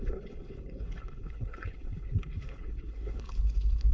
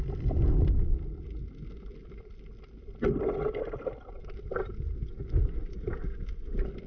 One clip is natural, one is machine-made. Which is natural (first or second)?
second